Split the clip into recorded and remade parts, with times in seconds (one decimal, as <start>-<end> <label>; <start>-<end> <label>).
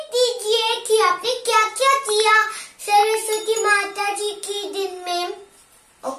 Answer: 0.0-3.0 recorded; 3.0-5.5 remade; 5.5-6.2 recorded